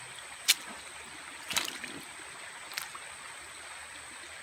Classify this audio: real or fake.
real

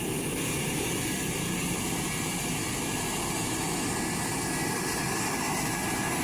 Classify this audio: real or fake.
real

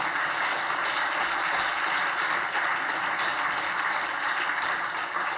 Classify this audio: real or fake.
real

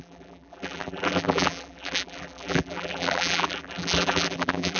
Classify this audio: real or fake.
fake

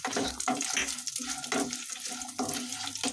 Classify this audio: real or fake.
real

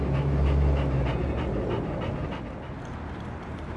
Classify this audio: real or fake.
real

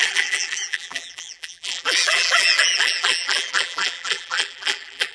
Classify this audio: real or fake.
fake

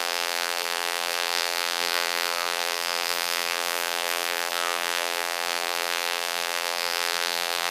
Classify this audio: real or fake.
fake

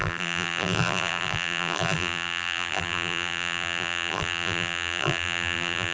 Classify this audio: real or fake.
fake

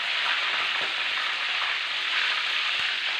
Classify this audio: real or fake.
real